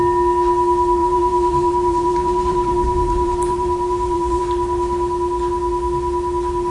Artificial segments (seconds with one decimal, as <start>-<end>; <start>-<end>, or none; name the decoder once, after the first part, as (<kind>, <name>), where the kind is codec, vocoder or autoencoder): 1.0-4.4 (vocoder, BigVGAN v2)